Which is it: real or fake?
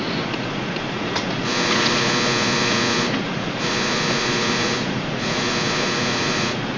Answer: fake